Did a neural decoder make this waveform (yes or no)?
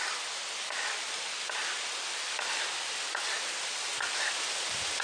no